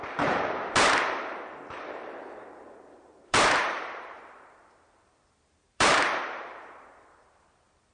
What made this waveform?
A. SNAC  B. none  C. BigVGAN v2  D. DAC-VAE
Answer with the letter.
C